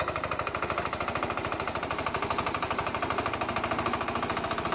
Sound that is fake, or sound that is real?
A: real